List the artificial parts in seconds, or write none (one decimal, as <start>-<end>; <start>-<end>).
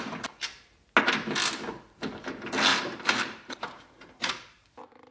2.7-5.1